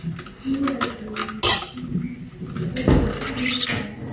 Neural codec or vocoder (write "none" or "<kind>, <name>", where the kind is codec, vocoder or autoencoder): none